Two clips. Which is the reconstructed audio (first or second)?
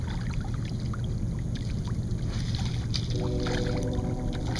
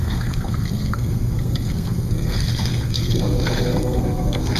second